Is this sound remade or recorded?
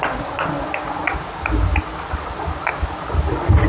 recorded